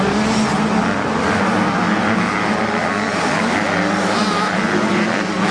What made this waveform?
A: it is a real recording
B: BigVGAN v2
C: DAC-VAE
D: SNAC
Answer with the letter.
A